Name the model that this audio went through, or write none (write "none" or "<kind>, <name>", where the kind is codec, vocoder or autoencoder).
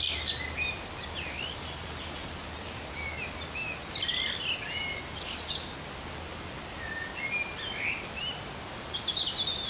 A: none